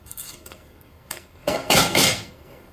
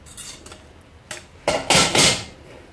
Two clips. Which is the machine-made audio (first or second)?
first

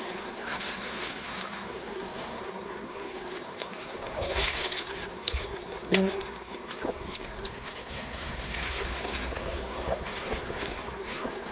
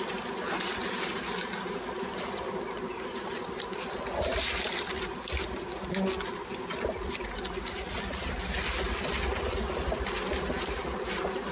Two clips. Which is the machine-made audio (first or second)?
first